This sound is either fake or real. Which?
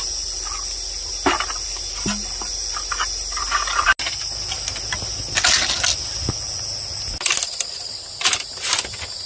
real